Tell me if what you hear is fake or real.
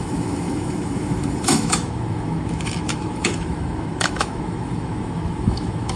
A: fake